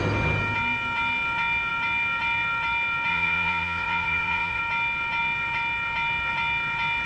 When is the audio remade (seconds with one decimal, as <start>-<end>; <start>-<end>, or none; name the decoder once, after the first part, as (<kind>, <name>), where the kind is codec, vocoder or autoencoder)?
3.1-4.6 (vocoder, Vocos)